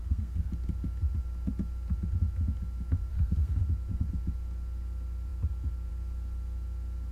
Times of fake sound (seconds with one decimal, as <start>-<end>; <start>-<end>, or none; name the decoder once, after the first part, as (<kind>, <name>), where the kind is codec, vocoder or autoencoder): 0.0-0.5 (codec, SNAC); 3.1-3.6